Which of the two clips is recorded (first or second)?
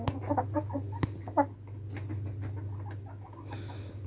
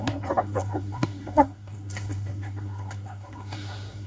first